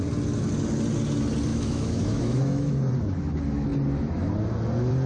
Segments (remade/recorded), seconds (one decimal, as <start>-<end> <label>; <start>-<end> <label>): 0.0-1.5 recorded; 1.5-2.9 remade; 2.9-5.1 recorded